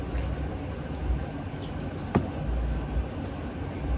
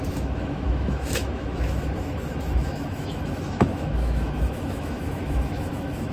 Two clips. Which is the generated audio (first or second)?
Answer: second